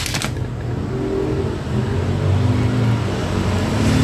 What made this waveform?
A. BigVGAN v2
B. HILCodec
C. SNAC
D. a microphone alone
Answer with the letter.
D